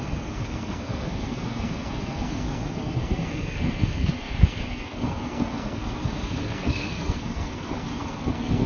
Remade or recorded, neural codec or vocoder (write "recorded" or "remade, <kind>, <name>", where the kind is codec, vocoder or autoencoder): remade, codec, SNAC